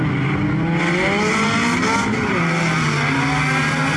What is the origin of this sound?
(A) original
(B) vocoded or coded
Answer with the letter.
A